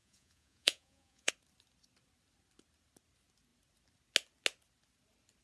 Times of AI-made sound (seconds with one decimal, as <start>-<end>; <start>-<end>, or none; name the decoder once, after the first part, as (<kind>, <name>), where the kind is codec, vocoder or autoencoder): 0.0-1.3 (vocoder, Vocos)